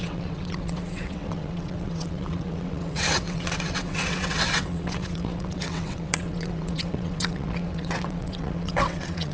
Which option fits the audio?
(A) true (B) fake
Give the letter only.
B